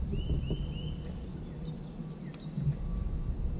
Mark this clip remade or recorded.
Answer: recorded